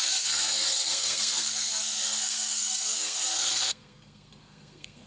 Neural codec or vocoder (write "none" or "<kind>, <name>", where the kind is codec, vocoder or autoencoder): codec, SNAC